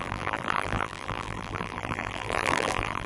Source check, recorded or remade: remade